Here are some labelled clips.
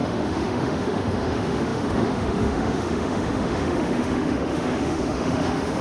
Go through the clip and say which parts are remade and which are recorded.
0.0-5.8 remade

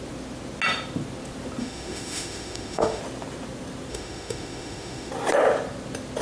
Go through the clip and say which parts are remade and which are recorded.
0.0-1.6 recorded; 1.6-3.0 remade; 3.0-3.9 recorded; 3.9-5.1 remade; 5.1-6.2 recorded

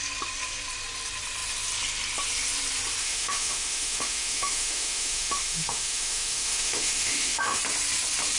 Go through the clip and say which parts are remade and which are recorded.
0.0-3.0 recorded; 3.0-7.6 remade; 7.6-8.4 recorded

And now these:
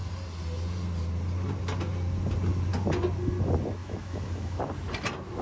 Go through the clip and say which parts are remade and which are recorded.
0.0-3.8 recorded; 3.8-4.6 remade; 4.6-5.4 recorded

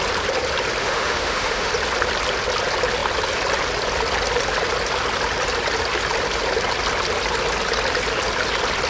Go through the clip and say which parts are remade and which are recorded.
0.0-0.8 recorded; 0.8-1.7 remade; 1.7-8.9 recorded

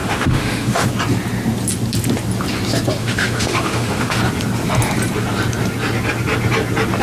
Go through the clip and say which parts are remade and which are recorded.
0.0-0.9 remade; 0.9-3.0 recorded; 3.0-4.2 remade; 4.2-7.0 recorded

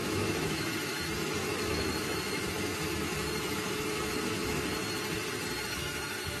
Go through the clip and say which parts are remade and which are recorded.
0.0-4.8 remade; 4.8-5.6 recorded; 5.6-6.4 remade

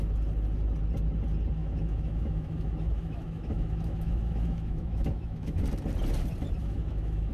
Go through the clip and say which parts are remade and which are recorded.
0.0-1.6 recorded; 1.6-5.6 remade; 5.6-6.6 recorded; 6.6-7.3 remade